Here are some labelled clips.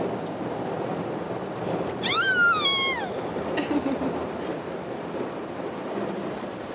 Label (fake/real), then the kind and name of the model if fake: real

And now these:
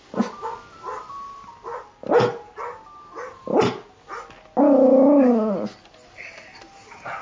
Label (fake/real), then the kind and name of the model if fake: real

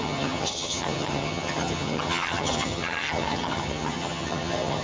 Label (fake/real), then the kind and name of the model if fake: fake, vocoder, HiFi-GAN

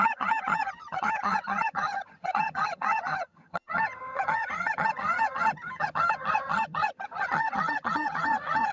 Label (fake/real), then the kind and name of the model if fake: fake, vocoder, HiFi-GAN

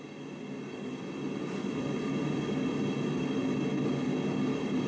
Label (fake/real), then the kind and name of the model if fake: real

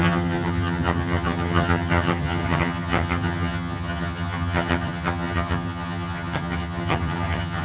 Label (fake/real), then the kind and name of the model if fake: fake, vocoder, HiFi-GAN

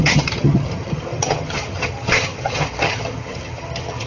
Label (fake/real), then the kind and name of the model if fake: fake, vocoder, HiFi-GAN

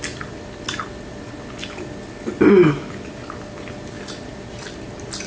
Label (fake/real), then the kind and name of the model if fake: real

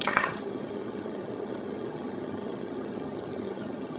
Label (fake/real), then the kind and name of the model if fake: fake, vocoder, HiFi-GAN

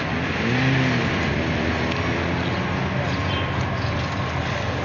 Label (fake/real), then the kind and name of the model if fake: real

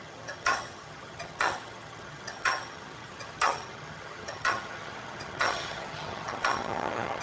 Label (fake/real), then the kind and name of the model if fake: fake, vocoder, HiFi-GAN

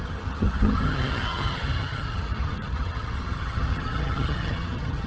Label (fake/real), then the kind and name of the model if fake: fake, vocoder, HiFi-GAN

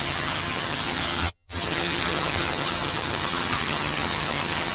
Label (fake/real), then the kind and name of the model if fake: fake, vocoder, HiFi-GAN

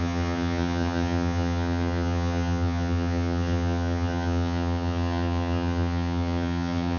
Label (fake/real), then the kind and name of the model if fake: fake, vocoder, HiFi-GAN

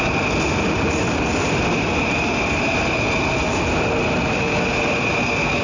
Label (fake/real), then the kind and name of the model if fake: real